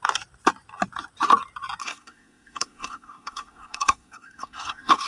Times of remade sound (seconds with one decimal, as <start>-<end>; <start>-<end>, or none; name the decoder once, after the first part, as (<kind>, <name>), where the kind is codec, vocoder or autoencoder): 1.8-5.1 (codec, SNAC)